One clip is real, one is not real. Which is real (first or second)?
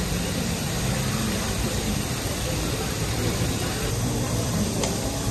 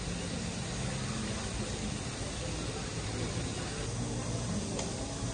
second